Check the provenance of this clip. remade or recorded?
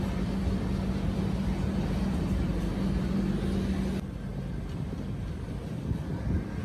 recorded